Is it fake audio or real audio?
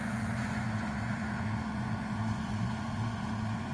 fake